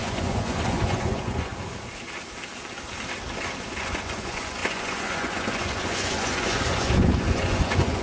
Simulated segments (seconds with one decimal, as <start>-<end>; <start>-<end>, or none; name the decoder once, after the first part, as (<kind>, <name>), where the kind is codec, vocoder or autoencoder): 0.0-1.5 (vocoder, Vocos); 3.8-8.0